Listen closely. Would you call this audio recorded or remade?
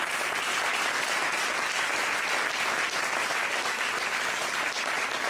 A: recorded